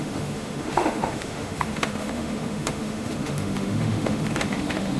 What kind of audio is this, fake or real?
fake